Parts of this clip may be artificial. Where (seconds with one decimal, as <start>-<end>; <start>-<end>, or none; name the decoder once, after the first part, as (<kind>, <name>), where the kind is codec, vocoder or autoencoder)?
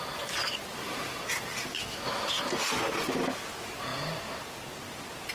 1.7-2.3 (autoencoder, DAC-VAE)